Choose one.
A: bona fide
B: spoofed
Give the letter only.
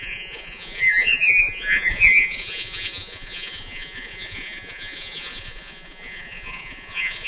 B